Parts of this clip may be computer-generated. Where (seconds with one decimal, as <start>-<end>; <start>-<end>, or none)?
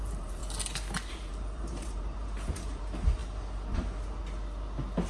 0.0-0.4; 1.1-3.2